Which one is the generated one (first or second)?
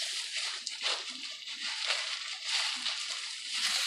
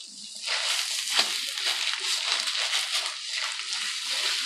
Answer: first